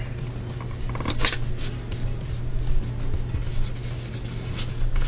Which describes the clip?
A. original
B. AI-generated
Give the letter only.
A